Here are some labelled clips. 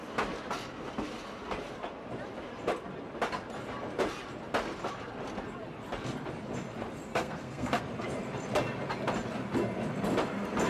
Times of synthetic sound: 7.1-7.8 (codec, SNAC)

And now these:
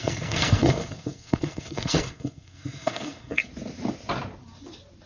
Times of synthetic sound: 0.0-3.5 (codec, SNAC)

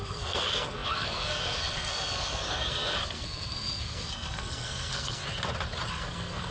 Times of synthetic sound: 0.0-5.2 (codec, SNAC); 5.9-6.5

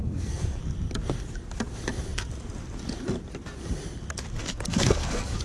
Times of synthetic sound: 0.0-0.6 (codec, SNAC); 4.4-5.4

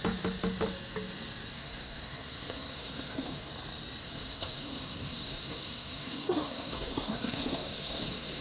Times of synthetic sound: 1.5-3.5 (codec, SNAC); 4.0-8.4

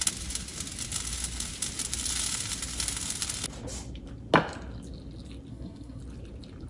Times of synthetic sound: 5.5-6.0 (codec, SNAC)

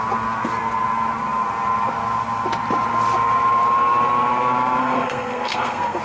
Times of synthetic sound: 4.8-6.0 (codec, SNAC)

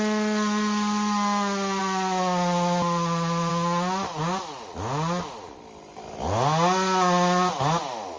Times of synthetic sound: none